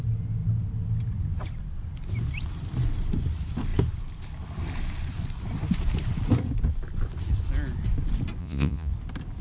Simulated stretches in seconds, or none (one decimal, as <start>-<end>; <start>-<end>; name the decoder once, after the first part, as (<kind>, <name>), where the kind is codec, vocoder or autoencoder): 8.4-8.9 (vocoder, Vocos)